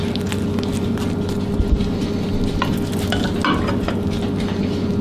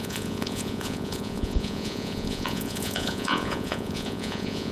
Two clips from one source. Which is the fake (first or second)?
second